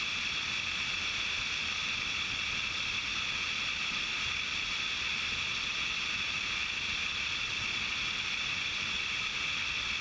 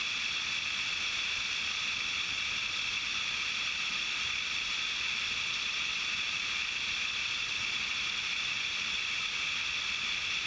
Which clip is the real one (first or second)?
first